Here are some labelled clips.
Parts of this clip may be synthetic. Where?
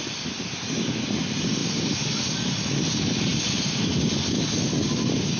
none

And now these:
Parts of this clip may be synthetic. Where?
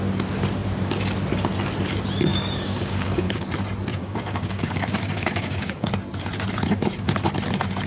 2.3-3.4 (codec, DAC); 3.9-5.9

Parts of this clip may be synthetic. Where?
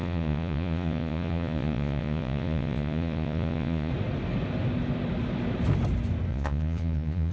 0.0-3.9 (vocoder, Vocos); 6.3-7.3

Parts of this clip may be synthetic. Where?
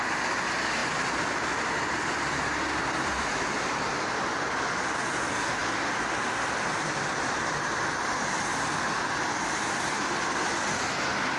0.8-4.5 (vocoder, BigVGAN v2); 5.6-10.6